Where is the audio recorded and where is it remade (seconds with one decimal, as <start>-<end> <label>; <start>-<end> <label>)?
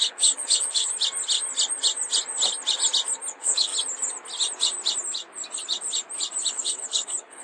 0.0-0.9 remade; 0.9-3.3 recorded; 3.3-3.7 remade; 3.7-6.5 recorded; 6.5-7.4 remade